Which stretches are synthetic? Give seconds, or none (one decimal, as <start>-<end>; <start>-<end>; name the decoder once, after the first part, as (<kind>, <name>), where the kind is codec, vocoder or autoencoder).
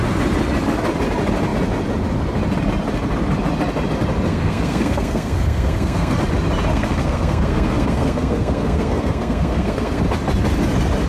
4.3-6.2 (codec, SNAC); 6.7-10.0